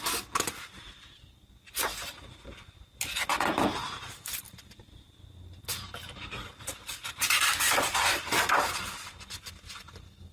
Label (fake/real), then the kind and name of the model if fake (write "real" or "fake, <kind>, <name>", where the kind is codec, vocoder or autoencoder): fake, vocoder, BigVGAN v2